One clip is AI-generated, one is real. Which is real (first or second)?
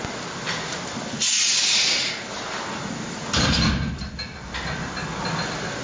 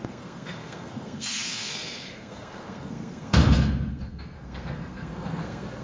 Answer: first